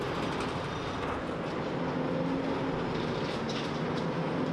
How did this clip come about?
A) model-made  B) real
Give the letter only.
B